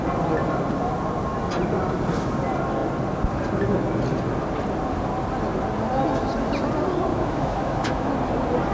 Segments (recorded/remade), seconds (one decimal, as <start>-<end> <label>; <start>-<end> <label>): 0.0-7.1 recorded; 7.1-8.1 remade; 8.1-8.7 recorded